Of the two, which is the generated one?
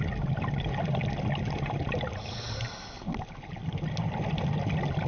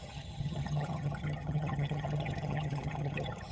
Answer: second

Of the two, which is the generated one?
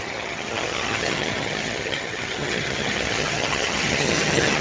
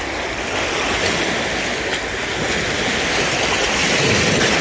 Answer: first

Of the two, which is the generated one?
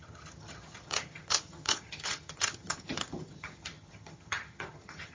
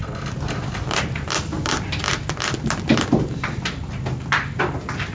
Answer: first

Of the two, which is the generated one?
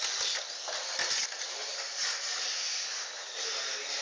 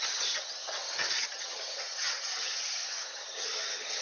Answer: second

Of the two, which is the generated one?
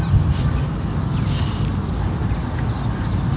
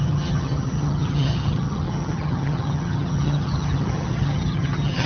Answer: second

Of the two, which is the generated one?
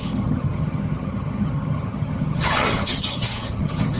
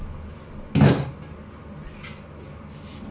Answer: first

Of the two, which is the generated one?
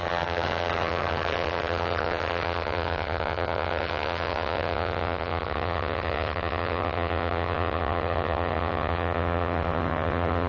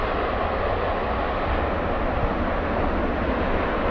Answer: first